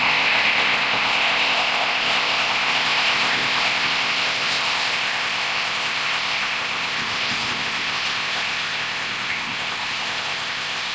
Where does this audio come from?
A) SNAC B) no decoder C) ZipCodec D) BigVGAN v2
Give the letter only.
C